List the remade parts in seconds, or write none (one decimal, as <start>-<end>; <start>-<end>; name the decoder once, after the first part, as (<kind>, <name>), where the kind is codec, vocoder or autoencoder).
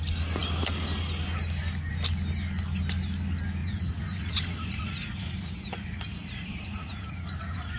3.6-7.8 (vocoder, Vocos)